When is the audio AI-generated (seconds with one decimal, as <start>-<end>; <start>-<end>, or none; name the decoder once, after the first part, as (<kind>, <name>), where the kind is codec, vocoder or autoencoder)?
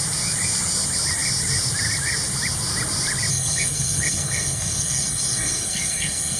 3.3-6.4 (codec, SNAC)